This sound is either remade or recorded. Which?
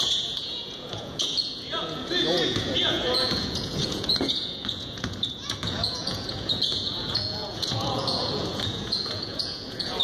remade